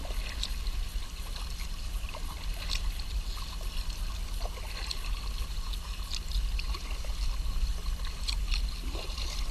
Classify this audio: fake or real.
real